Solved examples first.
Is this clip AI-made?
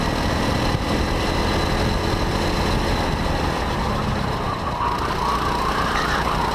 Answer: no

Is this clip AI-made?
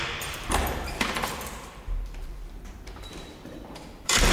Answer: yes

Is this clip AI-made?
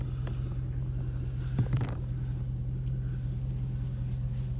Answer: no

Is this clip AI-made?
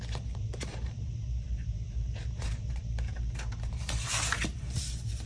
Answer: yes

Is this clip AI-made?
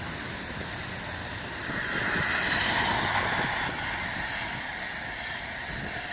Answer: yes